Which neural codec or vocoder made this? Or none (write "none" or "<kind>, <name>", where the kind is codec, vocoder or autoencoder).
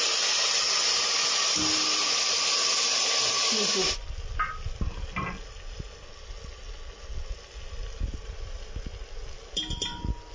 none